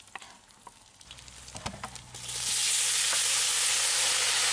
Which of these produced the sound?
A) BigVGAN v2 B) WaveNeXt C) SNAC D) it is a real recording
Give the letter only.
D